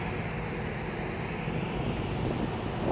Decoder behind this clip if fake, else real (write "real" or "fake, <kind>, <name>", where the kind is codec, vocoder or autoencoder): real